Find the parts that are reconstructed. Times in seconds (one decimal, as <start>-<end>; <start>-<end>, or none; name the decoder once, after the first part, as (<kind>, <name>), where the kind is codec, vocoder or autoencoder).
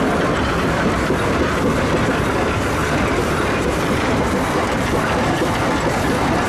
2.8-5.0 (vocoder, BigVGAN v2)